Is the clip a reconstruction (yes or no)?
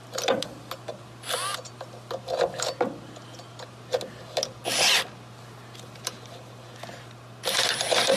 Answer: no